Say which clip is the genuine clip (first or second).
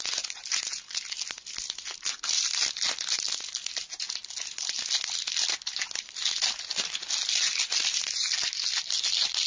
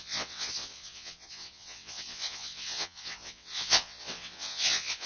first